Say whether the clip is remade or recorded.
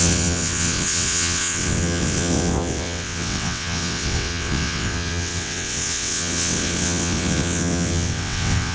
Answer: remade